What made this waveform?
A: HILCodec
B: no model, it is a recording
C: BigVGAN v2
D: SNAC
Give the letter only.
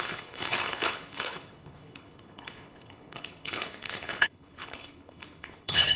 A